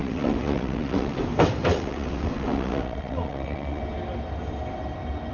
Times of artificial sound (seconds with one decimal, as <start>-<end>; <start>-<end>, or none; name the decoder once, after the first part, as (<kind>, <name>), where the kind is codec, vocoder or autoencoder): 0.0-1.2 (vocoder, WaveNeXt); 1.6-3.8